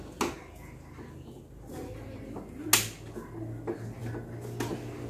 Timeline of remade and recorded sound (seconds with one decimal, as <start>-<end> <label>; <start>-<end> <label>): 0.0-5.1 recorded